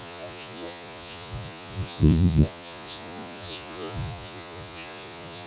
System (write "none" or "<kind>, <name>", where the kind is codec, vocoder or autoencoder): vocoder, Vocos